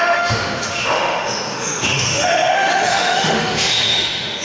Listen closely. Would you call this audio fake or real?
fake